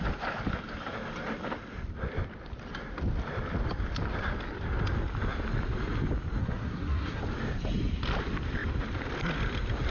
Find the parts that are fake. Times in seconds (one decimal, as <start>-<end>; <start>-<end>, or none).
6.4-7.2